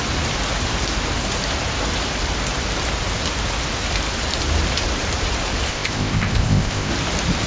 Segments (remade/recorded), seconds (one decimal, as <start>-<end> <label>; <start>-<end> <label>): 0.0-5.7 recorded; 5.7-6.9 remade; 6.9-7.5 recorded

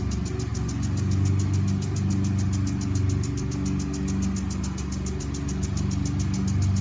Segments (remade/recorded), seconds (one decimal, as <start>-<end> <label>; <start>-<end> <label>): 0.0-6.8 recorded

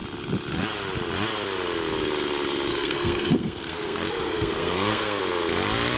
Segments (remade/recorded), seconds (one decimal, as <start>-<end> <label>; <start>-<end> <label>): 0.0-2.7 recorded; 2.7-5.2 remade; 5.2-6.0 recorded

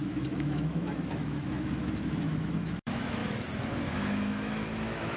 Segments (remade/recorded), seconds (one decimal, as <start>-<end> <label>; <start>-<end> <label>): 0.0-3.2 remade; 3.2-3.9 recorded; 3.9-5.2 remade

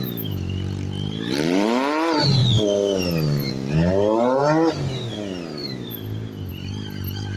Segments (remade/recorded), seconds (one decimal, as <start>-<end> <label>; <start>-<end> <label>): 0.0-5.6 recorded; 5.6-6.5 remade; 6.5-7.4 recorded

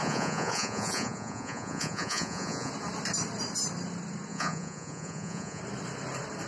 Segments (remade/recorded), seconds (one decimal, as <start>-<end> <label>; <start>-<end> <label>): 0.0-2.7 remade; 2.7-4.3 recorded; 4.3-5.6 remade; 5.6-6.5 recorded